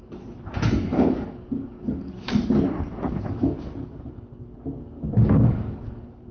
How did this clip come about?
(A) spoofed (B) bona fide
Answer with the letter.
A